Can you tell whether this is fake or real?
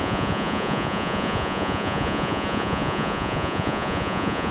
fake